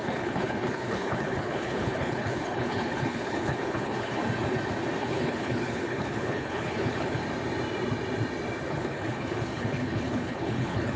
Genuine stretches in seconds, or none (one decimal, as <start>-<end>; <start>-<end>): 4.2-5.0; 7.2-8.7